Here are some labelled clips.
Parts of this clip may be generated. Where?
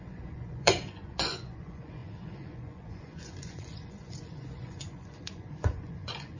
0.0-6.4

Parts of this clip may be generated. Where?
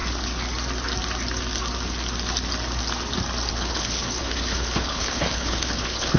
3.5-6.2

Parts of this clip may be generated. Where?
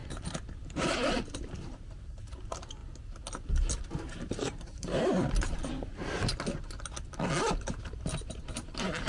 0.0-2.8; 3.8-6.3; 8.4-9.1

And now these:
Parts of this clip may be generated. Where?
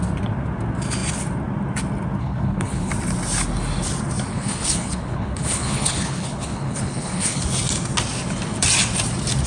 2.2-2.9; 4.3-7.4